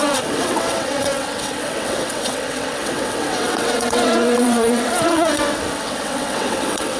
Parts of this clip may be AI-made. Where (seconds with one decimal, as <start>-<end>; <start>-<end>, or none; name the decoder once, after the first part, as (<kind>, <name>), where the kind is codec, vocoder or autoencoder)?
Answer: 0.0-7.0 (vocoder, WaveNeXt)

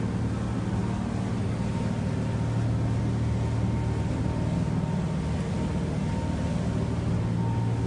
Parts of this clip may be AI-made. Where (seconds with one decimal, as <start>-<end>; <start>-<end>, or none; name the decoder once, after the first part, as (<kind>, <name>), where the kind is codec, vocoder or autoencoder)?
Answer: none

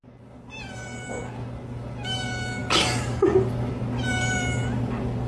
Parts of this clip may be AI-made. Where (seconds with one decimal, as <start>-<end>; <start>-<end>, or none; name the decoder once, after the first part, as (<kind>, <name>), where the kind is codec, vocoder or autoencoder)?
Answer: none

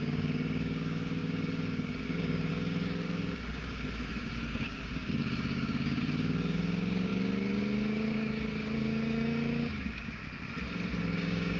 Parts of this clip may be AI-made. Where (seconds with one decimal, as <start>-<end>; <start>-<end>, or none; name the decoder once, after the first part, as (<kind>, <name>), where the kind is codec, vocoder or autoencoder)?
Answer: 0.0-10.2 (codec, DAC); 11.0-11.6

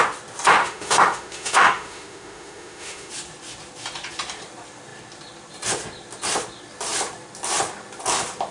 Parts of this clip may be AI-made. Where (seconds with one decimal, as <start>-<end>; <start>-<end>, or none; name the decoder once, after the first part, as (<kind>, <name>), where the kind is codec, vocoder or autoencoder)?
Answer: 0.6-3.1 (autoencoder, DAC-VAE)

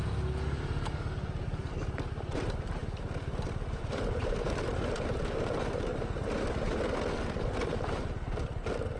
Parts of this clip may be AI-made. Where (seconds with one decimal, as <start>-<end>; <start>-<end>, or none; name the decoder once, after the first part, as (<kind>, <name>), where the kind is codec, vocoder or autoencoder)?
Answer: 2.4-5.9 (vocoder, BigVGAN v2)

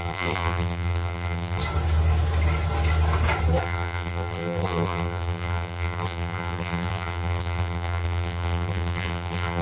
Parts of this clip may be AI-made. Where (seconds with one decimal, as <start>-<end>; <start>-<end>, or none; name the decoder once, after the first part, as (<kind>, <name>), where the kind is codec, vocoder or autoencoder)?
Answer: 0.0-1.6 (vocoder, BigVGAN v2); 3.6-9.6

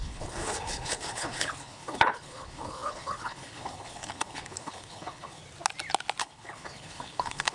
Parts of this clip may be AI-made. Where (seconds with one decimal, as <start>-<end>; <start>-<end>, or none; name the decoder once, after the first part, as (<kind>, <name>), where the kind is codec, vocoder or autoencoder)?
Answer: 0.0-5.4 (codec, HILCodec); 6.2-7.5